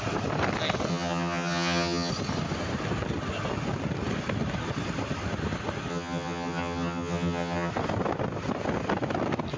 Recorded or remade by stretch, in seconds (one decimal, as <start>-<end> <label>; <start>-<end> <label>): 0.0-0.9 recorded; 0.9-2.1 remade; 2.1-5.9 recorded; 5.9-7.7 remade; 7.7-9.6 recorded